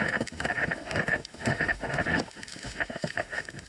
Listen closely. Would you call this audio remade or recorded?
remade